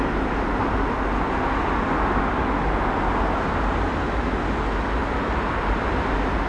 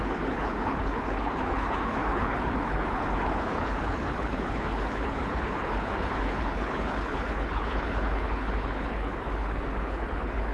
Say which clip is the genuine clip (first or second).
first